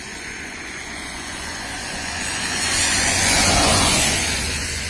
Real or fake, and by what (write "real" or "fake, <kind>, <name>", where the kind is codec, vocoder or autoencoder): fake, vocoder, Vocos